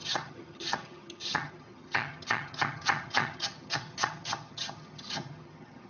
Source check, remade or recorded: remade